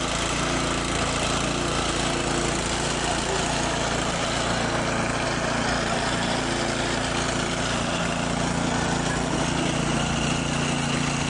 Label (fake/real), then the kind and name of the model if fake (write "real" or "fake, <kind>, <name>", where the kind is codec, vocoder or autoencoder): real